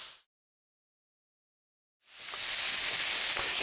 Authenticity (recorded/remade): recorded